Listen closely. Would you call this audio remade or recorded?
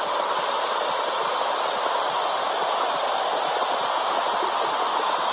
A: recorded